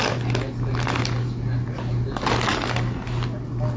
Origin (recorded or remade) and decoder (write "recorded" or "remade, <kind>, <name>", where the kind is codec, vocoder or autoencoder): recorded